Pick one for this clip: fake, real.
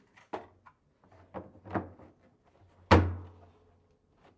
real